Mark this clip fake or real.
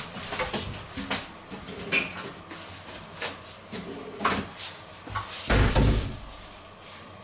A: real